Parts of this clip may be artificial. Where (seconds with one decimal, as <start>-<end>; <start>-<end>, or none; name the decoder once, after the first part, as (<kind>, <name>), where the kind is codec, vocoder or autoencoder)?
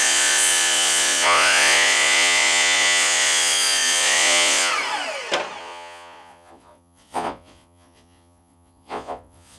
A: 0.0-4.7 (vocoder, Vocos); 5.6-9.6